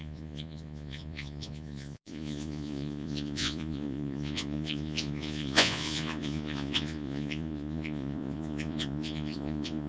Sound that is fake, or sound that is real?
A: fake